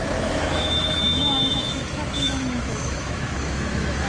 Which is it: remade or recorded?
remade